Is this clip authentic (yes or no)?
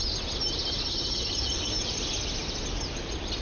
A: yes